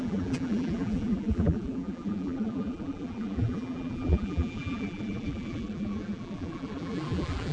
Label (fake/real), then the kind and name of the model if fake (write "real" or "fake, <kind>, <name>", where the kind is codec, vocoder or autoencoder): fake, vocoder, BigVGAN v2